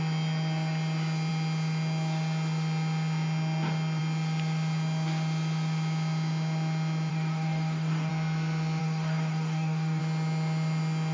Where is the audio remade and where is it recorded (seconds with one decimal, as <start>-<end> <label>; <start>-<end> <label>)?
0.0-7.1 recorded; 7.1-8.1 remade; 8.1-8.8 recorded; 8.8-10.0 remade; 10.0-11.1 recorded